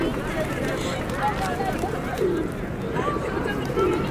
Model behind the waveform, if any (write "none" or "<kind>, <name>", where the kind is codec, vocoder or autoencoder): none